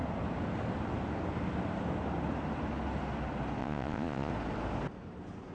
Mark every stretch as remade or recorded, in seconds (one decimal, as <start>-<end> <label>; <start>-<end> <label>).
0.0-3.6 recorded; 3.6-4.3 remade; 4.3-5.5 recorded

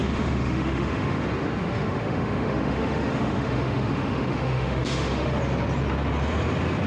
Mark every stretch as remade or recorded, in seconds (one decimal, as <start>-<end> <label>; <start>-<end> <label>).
0.0-1.2 remade; 1.2-1.6 recorded; 1.6-5.4 remade; 5.4-6.9 recorded

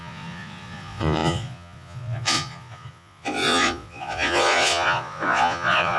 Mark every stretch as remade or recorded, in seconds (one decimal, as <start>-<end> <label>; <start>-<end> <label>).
0.0-6.0 remade